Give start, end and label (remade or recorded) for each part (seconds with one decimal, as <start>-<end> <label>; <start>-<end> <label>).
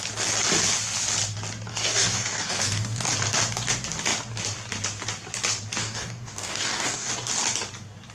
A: 0.0-1.7 recorded; 1.7-3.0 remade; 3.0-5.8 recorded; 5.8-7.1 remade; 7.1-8.1 recorded